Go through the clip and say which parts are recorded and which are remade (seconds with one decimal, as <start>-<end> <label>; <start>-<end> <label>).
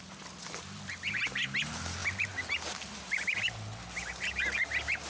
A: 0.0-5.1 recorded